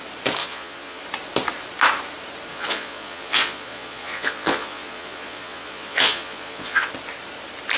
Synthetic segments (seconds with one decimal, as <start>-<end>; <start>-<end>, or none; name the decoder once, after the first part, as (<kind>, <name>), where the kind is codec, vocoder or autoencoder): 0.4-1.0 (vocoder, Vocos); 2.5-6.9